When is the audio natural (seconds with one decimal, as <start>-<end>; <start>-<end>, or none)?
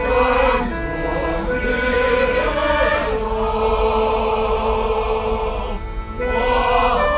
0.0-7.2